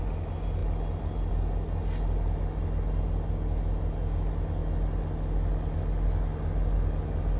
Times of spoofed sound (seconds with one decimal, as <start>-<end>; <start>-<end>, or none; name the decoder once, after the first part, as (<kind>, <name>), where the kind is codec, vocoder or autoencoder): none